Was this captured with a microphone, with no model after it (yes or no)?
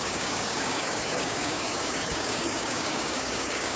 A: no